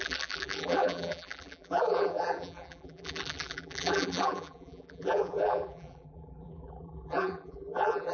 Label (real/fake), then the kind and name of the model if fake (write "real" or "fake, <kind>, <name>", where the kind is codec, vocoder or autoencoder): fake, vocoder, BigVGAN v2